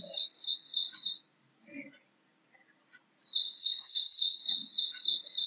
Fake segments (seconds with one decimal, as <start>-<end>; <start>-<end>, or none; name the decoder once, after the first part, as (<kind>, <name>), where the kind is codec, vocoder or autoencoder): 3.6-4.4 (autoencoder, DAC-VAE)